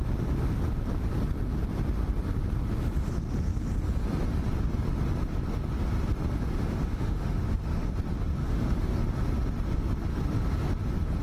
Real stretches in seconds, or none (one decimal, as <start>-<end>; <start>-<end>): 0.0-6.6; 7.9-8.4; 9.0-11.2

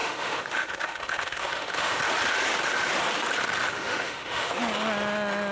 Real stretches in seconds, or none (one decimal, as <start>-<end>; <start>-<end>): 2.0-3.6; 4.5-5.5

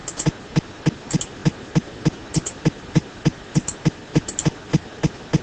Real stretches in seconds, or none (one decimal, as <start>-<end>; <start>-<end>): 0.0-5.4

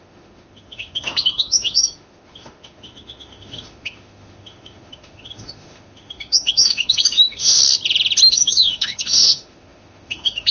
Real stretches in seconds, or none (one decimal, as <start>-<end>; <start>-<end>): 7.6-8.3